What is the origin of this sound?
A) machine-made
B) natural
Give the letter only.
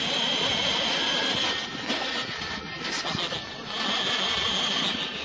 B